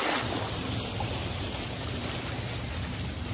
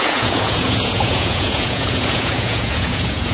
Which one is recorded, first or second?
first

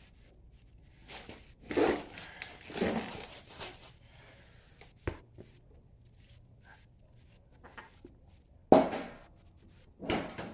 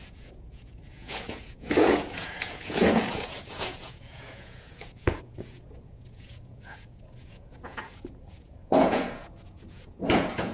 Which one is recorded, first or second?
first